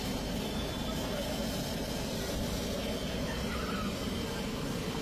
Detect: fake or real real